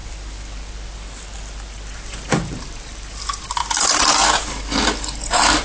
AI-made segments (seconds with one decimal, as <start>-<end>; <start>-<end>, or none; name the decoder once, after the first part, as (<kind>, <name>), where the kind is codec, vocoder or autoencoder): none